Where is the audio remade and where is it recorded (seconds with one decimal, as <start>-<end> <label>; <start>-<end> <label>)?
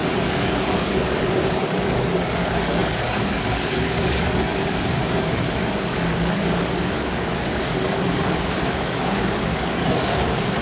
0.0-10.6 remade